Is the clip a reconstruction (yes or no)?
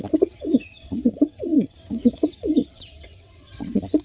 yes